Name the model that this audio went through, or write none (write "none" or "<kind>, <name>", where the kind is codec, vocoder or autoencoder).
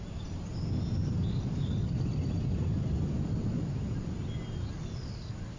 none